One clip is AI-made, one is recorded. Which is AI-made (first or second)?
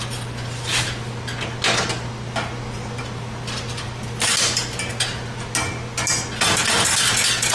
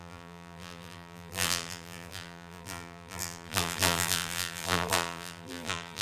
second